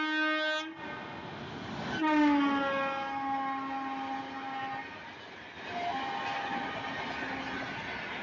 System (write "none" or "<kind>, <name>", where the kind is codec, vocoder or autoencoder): none